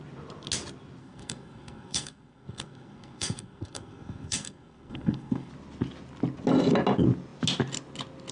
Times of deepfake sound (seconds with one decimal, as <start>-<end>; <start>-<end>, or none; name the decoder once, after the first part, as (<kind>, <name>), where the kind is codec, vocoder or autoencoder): 1.0-5.5 (codec, SNAC)